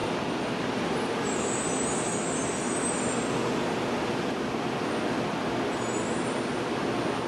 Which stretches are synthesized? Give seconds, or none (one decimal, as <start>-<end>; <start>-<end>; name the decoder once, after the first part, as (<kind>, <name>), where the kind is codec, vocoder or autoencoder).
0.0-1.4 (vocoder, BigVGAN v2)